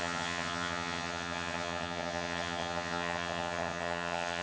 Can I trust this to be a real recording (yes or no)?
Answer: no